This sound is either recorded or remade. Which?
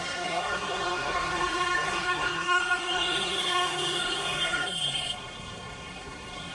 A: remade